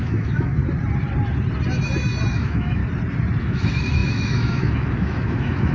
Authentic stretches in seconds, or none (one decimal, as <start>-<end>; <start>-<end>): 0.6-2.3; 2.8-3.4